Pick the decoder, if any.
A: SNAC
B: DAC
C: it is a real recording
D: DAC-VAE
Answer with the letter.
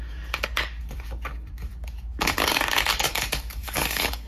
B